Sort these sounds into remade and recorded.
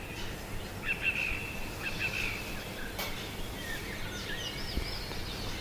recorded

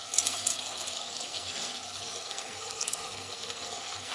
remade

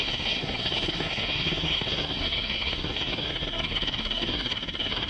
remade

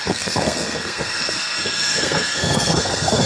remade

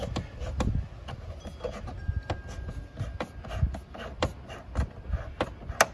recorded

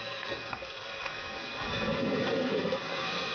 remade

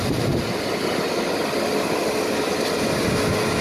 recorded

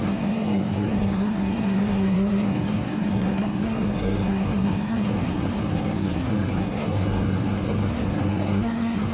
remade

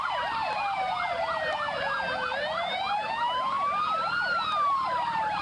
recorded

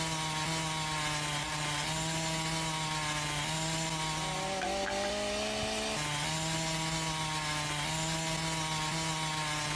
recorded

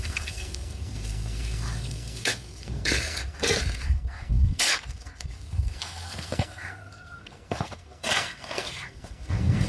remade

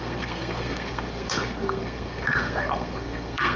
remade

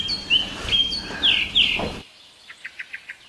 recorded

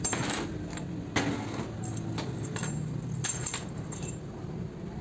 recorded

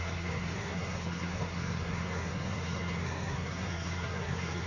remade